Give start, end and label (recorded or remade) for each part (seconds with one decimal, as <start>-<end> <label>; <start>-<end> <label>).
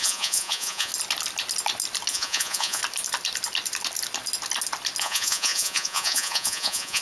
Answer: 0.0-0.9 remade; 0.9-2.1 recorded; 2.1-2.8 remade; 2.8-5.0 recorded; 5.0-7.0 remade